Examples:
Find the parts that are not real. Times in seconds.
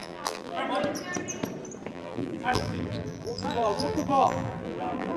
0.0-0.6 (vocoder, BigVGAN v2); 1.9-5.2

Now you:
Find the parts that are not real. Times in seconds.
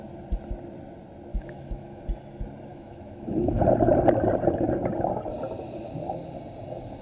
1.3-2.0 (autoencoder, DAC-VAE); 2.7-3.6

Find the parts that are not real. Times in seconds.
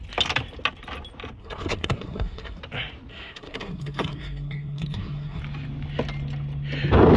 1.4-2.6 (codec, SNAC); 3.1-5.4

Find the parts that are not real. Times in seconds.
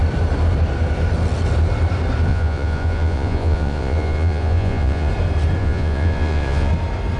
2.3-5.1 (vocoder, Vocos); 5.6-6.7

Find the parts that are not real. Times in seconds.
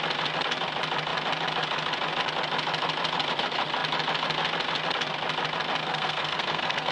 5.8-6.9 (codec, SNAC)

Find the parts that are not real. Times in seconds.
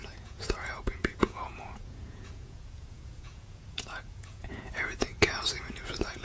0.0-6.2 (vocoder, Vocos)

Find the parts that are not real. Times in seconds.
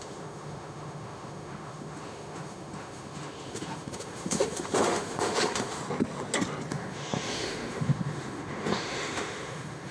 0.0-5.8 (autoencoder, DAC-VAE); 6.7-9.9